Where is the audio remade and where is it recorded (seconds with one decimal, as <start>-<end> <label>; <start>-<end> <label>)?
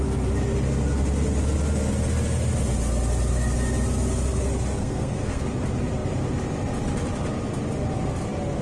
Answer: 0.0-4.7 recorded; 4.7-5.4 remade; 5.4-8.6 recorded